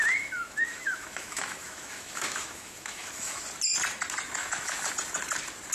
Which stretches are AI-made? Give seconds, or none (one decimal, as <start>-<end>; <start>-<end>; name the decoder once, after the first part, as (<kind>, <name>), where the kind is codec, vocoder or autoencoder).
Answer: 0.0-3.4 (autoencoder, DAC-VAE); 4.4-4.9